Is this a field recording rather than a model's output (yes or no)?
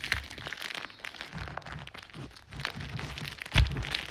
yes